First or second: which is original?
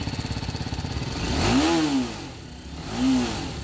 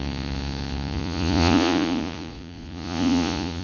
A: first